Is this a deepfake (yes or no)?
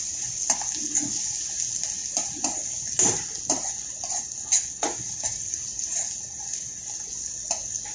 no